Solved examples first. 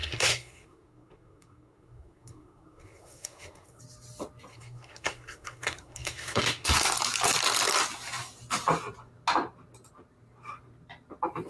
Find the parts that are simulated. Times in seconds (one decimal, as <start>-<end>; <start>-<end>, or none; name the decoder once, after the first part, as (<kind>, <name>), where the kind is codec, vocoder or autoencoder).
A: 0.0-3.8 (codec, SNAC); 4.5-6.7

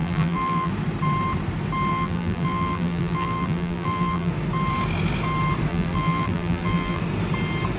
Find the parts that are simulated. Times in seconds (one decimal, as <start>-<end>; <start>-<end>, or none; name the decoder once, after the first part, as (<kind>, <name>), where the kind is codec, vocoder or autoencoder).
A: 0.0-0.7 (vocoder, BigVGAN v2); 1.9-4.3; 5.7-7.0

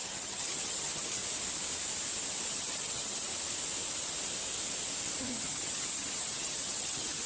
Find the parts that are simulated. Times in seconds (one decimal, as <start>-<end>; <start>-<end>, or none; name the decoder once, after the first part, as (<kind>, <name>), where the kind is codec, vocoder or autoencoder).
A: 0.0-1.2 (vocoder, HiFi-GAN); 2.5-3.3; 5.2-7.3

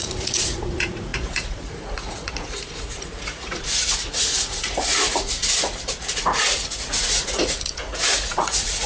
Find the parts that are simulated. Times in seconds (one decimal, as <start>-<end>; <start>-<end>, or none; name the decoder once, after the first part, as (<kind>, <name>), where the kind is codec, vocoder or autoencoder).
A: 0.0-5.4 (vocoder, Vocos); 6.2-8.9

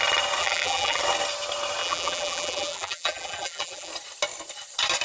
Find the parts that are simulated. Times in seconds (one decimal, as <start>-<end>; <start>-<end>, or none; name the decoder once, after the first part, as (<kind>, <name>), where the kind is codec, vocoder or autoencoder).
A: 0.4-1.0 (vocoder, BigVGAN v2); 1.8-3.9

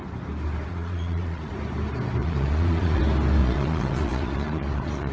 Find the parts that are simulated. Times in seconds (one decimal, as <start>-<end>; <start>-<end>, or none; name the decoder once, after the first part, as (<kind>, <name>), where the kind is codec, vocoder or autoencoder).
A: 0.7-1.5 (vocoder, Vocos); 2.2-3.0; 3.4-5.1

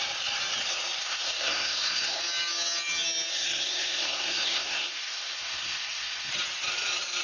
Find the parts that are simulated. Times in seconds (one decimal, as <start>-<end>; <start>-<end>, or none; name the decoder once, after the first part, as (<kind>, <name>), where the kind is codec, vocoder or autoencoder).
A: 1.0-2.2 (codec, SNAC); 3.3-6.3

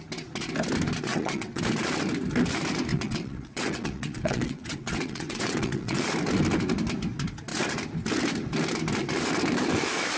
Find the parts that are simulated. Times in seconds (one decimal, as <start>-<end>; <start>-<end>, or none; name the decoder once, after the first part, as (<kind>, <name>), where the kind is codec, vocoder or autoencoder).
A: 1.1-1.6 (vocoder, WaveNeXt); 2.9-6.0